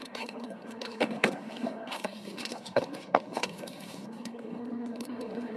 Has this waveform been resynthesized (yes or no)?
yes